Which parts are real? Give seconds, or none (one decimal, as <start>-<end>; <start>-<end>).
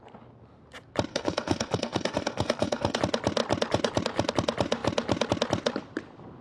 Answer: 0.0-1.1; 3.0-6.4